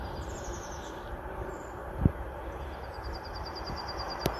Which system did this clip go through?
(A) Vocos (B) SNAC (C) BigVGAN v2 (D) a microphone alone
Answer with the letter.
C